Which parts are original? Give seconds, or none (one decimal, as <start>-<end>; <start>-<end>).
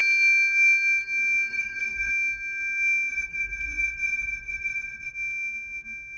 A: 0.0-1.5; 2.1-3.1; 5.1-6.2